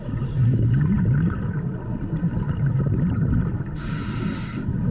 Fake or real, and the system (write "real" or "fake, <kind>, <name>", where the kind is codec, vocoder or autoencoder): real